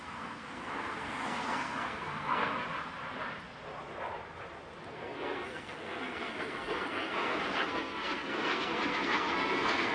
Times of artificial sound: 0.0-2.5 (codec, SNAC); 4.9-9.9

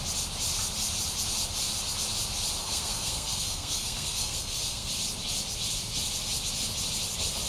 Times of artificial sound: 2.6-4.9 (codec, SNAC)

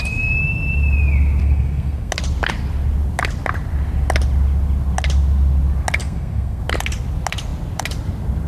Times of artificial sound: 1.4-2.1 (codec, SNAC); 6.0-6.6

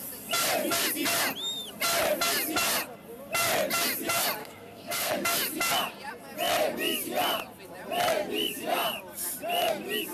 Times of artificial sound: 4.4-5.1 (codec, SNAC)

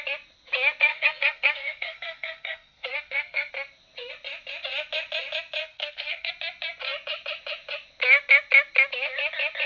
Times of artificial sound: 0.9-3.5 (codec, SNAC); 5.6-6.3

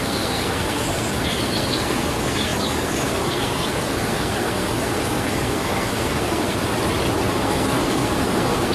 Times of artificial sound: 0.0-6.6 (codec, SNAC); 7.3-8.7

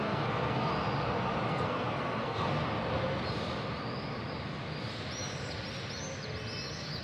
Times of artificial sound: 0.0-0.7 (codec, SNAC); 1.5-2.6

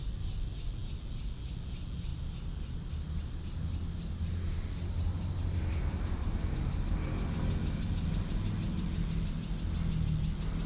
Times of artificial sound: none